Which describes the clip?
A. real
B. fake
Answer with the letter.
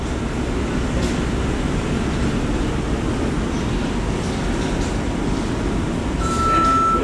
A